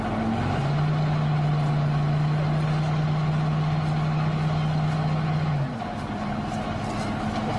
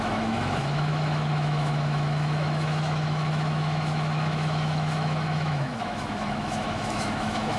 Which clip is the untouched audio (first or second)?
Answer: first